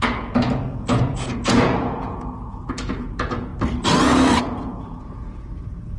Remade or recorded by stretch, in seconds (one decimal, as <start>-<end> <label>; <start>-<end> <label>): 0.0-3.5 remade; 3.5-4.4 recorded; 4.4-6.0 remade